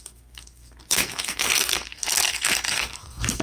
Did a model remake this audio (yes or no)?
yes